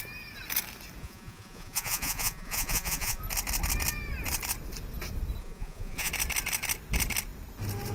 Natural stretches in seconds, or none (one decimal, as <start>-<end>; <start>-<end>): 0.0-1.0; 3.2-5.4; 6.1-7.9